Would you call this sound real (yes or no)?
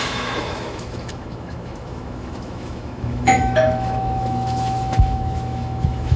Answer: no